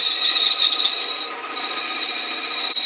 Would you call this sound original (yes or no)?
yes